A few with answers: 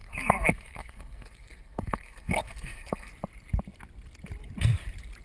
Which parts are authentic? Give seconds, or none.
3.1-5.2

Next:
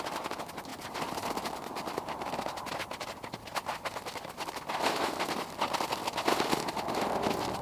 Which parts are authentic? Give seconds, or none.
0.0-7.6

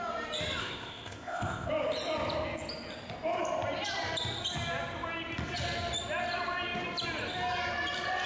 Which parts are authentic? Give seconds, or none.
0.0-0.6; 1.7-8.3